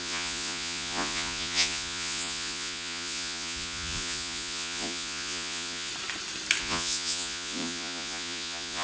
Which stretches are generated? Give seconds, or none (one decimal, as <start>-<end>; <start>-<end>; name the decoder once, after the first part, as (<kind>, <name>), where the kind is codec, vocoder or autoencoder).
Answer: 0.0-5.9 (vocoder, Vocos); 6.6-8.8